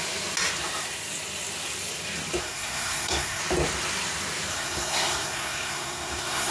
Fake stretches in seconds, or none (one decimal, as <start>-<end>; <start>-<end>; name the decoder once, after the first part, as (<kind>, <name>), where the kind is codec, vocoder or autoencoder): 2.4-3.4 (codec, SNAC); 4.5-6.5